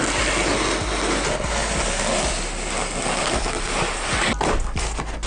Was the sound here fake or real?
real